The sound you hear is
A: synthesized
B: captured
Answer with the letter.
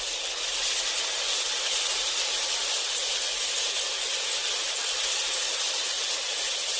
B